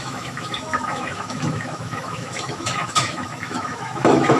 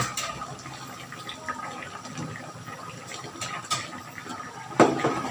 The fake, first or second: first